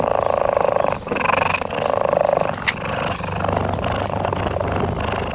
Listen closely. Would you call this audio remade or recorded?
recorded